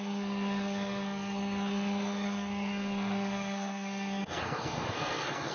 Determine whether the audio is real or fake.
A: fake